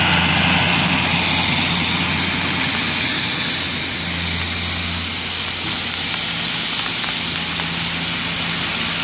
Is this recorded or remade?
recorded